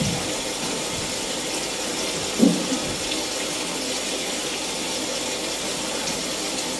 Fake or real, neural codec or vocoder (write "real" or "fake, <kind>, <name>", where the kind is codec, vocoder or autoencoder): real